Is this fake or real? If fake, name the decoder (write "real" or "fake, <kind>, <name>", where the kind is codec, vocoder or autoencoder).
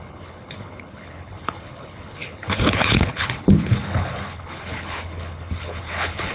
fake, codec, HILCodec